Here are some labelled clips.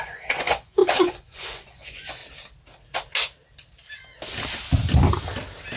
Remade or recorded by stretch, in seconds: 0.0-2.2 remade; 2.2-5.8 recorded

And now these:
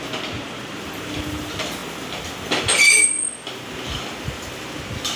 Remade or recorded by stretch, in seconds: 0.0-5.2 recorded

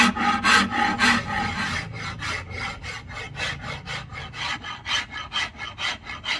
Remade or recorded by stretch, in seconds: 0.0-6.4 recorded

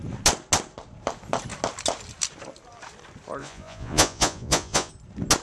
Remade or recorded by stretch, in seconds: 0.0-3.4 recorded; 3.4-4.9 remade; 4.9-5.4 recorded

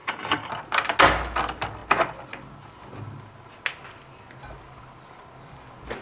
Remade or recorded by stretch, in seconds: 0.0-0.5 remade; 0.5-6.0 recorded